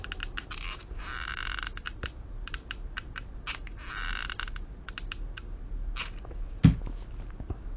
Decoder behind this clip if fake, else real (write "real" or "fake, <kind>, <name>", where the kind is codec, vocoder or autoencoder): real